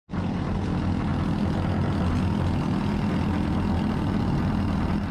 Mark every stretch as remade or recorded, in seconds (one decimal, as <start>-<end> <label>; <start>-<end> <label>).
0.0-5.1 recorded